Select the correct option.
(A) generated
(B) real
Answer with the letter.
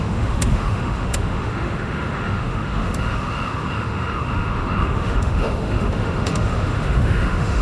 A